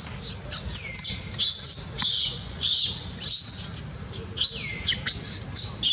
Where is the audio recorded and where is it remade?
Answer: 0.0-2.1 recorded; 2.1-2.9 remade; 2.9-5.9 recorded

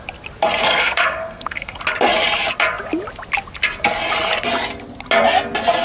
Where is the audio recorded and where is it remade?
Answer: 0.0-0.6 recorded; 0.6-1.8 remade; 1.8-5.8 recorded

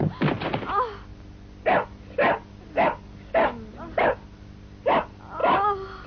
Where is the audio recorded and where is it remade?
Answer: 0.0-5.4 recorded; 5.4-6.1 remade

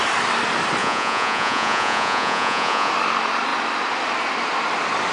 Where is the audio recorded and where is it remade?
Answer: 0.0-0.8 recorded; 0.8-2.9 remade; 2.9-5.1 recorded

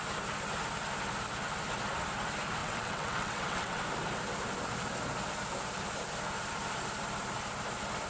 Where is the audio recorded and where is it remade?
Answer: 0.0-2.6 recorded; 2.6-3.8 remade; 3.8-8.1 recorded

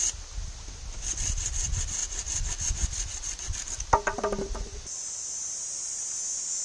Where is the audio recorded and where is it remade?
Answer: 0.0-6.6 recorded

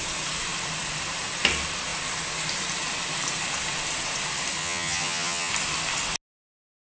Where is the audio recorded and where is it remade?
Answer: 0.0-4.6 recorded; 4.6-5.5 remade; 5.5-6.9 recorded

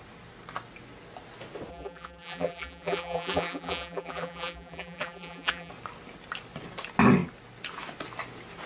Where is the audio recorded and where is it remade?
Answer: 0.0-1.7 recorded; 1.7-5.7 remade; 5.7-8.7 recorded